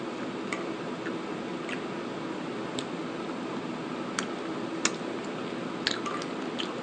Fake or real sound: real